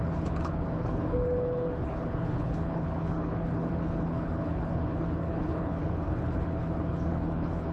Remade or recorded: remade